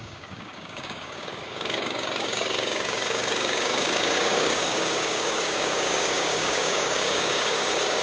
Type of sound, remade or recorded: remade